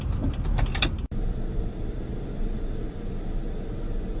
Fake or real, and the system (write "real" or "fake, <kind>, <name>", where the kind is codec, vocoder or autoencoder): real